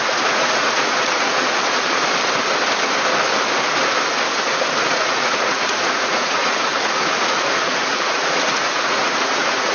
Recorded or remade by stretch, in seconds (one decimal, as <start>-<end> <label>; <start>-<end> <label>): 0.0-2.0 remade; 2.0-4.8 recorded; 4.8-9.7 remade